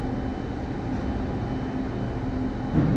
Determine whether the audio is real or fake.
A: real